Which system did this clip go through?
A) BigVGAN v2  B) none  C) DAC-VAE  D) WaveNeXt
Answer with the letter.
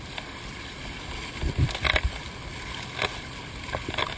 B